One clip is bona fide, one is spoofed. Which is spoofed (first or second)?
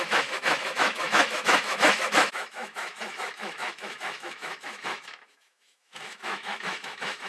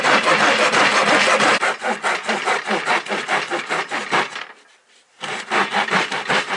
first